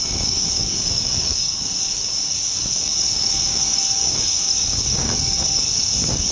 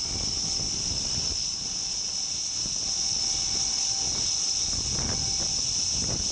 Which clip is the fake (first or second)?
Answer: first